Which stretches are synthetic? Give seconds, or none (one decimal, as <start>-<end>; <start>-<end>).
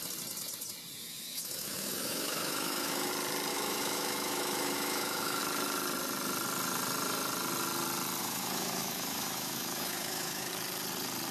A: 1.0-3.1; 3.5-5.4; 8.2-10.5